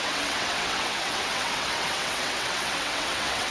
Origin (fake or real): fake